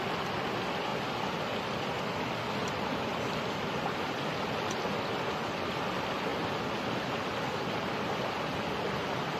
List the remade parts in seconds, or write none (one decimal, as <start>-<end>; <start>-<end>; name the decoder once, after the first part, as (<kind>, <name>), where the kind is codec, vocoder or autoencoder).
none